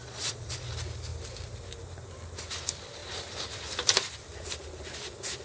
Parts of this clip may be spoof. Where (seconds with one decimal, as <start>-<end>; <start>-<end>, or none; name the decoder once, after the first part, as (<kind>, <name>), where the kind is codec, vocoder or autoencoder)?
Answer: 0.0-0.7 (vocoder, Vocos)